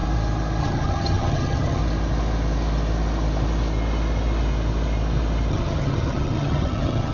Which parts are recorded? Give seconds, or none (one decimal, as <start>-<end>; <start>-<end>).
0.0-0.6; 1.8-5.5